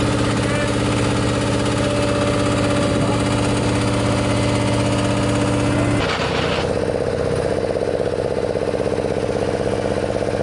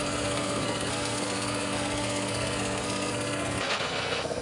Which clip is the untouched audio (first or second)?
first